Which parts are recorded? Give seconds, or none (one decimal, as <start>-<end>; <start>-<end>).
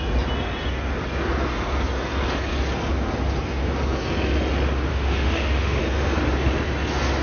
0.0-4.9; 5.8-7.2